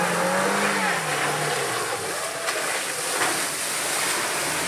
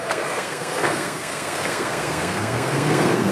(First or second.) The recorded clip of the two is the first